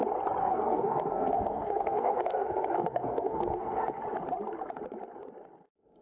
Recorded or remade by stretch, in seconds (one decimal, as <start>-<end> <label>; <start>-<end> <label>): 0.0-0.4 recorded; 0.4-4.0 remade; 4.0-6.0 recorded